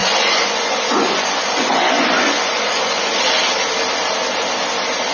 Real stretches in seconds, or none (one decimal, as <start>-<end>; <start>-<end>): 3.0-5.1